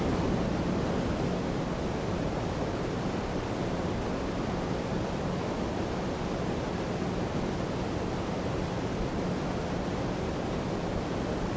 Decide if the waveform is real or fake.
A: real